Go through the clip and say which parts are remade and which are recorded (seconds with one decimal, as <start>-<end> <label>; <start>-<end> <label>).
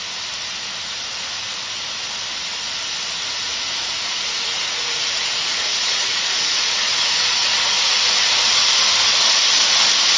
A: 0.0-3.4 recorded; 3.4-8.0 remade; 8.0-10.2 recorded